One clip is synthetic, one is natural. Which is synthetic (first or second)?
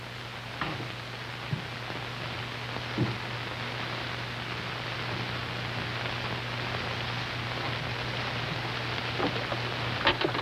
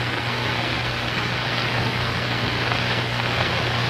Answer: second